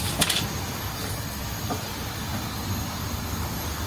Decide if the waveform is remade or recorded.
recorded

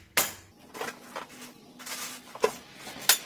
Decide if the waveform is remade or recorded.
recorded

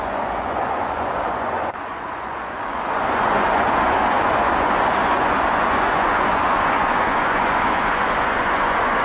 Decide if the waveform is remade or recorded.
remade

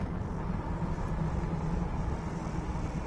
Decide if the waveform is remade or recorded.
recorded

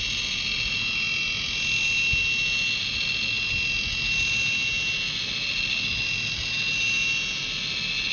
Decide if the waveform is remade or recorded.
recorded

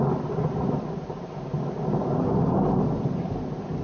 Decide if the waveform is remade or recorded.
recorded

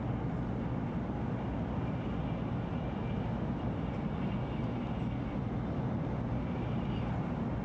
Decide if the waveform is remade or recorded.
recorded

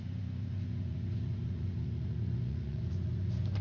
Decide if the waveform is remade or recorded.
remade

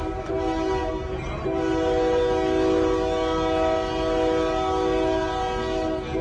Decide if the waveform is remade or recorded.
recorded